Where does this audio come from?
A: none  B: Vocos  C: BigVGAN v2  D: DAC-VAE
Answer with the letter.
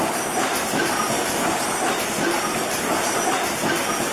A